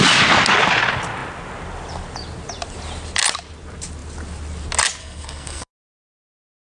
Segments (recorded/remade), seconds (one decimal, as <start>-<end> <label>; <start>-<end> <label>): 0.0-5.0 recorded; 5.0-5.7 remade; 5.7-6.6 recorded